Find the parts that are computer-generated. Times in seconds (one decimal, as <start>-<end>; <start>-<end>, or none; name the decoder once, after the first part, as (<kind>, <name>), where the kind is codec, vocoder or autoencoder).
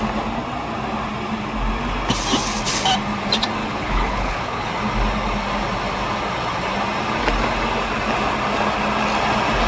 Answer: 3.6-4.7 (codec, HILCodec)